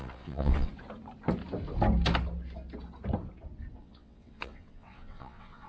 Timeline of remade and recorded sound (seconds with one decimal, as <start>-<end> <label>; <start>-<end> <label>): 0.0-0.7 remade; 0.7-3.8 recorded; 3.8-5.7 remade